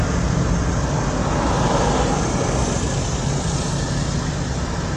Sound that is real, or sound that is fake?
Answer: real